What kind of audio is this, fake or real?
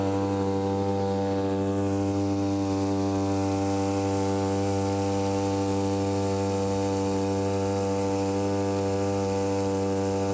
real